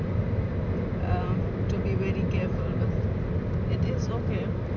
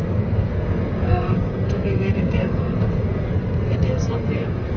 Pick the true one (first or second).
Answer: first